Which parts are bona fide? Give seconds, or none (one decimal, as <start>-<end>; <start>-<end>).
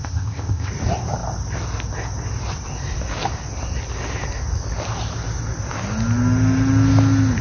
0.7-7.4